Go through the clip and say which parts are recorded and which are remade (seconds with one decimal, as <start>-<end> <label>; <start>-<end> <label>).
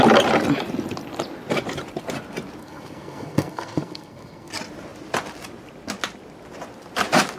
0.0-2.6 recorded; 2.6-4.5 remade; 4.5-7.4 recorded